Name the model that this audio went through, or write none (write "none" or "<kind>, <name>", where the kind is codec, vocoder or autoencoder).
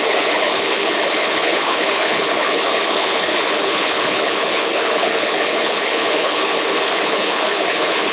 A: codec, HILCodec